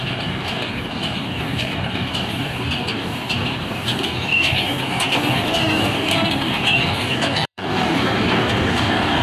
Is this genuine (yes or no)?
no